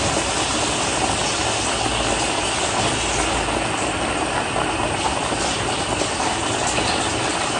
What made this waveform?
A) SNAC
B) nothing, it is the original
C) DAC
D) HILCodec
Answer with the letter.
B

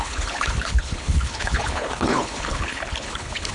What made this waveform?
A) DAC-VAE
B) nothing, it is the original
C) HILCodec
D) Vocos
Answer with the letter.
C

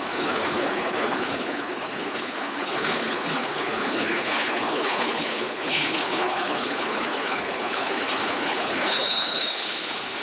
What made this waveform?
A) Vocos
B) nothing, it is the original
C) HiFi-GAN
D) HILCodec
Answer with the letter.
D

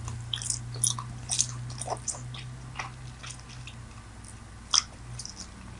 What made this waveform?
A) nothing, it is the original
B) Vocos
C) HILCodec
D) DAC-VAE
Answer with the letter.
A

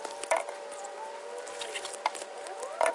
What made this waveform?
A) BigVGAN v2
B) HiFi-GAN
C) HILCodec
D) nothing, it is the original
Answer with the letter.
D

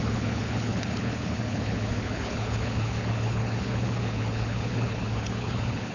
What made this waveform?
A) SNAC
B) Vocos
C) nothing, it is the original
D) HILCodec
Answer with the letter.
D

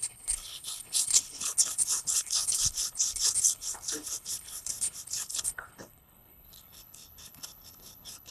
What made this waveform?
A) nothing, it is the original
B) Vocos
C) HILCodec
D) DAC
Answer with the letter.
C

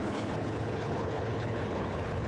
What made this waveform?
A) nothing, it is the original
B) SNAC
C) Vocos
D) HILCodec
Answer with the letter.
D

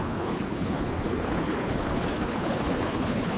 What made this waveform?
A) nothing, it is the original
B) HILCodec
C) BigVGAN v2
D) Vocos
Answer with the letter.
B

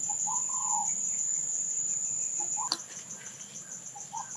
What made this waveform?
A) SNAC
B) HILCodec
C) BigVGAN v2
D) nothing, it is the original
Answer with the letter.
D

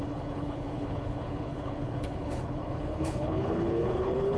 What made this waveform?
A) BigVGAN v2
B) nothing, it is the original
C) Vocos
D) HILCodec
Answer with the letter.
D